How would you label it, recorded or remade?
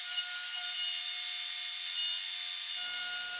recorded